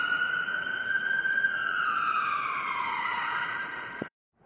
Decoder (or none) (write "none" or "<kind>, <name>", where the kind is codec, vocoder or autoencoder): vocoder, Vocos